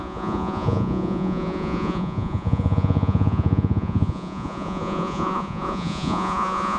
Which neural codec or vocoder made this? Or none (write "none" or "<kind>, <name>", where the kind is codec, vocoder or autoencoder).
vocoder, Vocos